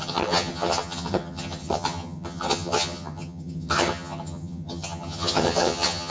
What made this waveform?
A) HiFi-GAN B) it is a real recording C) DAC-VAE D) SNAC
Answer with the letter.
A